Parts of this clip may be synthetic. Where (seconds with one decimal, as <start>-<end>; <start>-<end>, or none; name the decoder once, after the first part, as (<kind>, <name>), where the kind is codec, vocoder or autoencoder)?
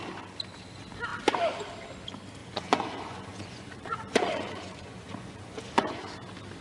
2.4-6.1 (vocoder, Vocos)